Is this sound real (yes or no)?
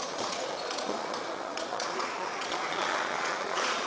no